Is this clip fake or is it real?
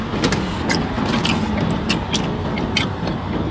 real